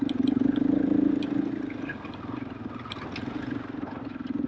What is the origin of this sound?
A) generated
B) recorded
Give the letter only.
B